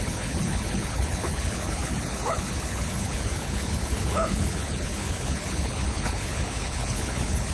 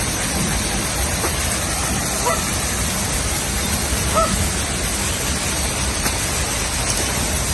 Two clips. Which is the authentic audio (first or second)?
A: second